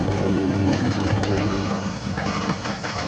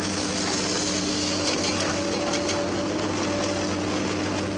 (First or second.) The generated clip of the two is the first